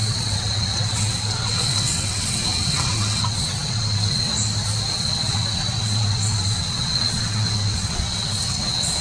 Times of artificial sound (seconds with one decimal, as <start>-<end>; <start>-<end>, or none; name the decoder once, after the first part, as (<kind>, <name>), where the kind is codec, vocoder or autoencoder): 0.0-4.3 (vocoder, WaveNeXt); 4.9-9.0